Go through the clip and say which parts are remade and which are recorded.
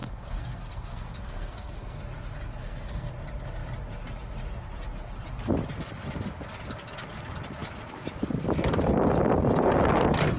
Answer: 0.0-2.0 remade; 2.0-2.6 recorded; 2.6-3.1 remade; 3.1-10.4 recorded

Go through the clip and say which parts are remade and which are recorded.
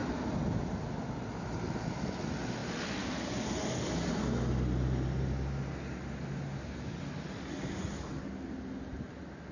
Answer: 0.0-9.5 recorded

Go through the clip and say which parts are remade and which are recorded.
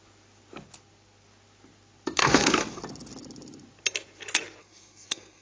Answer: 0.0-2.2 recorded; 2.2-2.8 remade; 2.8-4.6 recorded; 4.6-5.4 remade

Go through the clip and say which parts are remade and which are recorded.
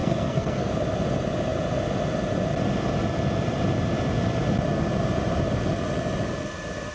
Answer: 0.0-0.7 remade; 0.7-6.9 recorded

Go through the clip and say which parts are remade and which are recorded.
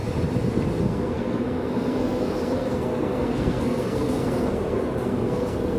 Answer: 0.0-0.8 recorded; 0.8-5.8 remade